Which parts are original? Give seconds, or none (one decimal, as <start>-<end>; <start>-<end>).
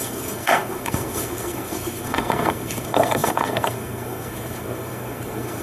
none